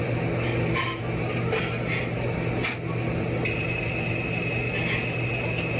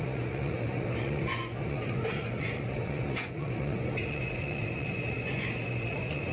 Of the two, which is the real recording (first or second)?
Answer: first